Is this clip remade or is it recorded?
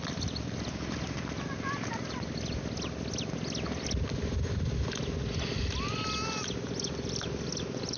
recorded